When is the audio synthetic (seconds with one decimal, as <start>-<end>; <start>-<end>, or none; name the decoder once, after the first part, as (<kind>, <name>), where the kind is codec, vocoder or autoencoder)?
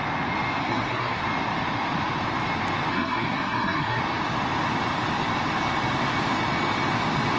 0.6-1.2 (codec, SNAC); 2.9-4.0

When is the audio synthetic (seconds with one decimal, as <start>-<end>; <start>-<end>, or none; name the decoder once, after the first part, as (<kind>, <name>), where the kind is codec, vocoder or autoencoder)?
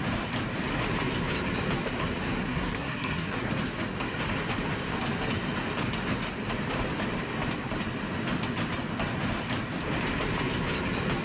2.4-3.5 (codec, SNAC)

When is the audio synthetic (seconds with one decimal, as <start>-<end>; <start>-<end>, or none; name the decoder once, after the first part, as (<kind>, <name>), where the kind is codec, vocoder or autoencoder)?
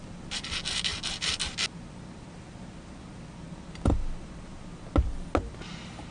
none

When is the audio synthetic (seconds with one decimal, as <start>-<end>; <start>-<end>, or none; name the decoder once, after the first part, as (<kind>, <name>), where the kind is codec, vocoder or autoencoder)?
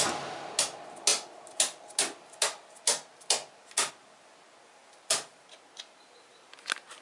none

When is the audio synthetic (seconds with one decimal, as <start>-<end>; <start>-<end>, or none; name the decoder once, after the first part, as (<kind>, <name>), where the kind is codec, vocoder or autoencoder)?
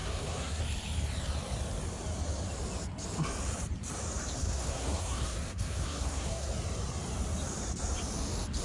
0.0-0.6 (codec, SNAC); 4.4-6.5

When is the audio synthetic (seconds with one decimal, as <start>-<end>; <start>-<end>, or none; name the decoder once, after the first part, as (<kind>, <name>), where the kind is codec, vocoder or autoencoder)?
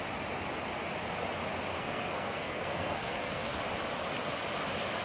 1.7-3.6 (codec, SNAC)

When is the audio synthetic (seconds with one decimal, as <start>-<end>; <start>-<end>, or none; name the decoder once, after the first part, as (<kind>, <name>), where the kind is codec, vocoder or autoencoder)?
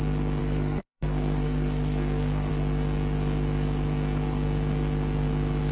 0.4-2.5 (codec, SNAC)